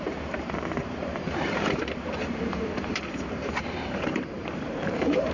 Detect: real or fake fake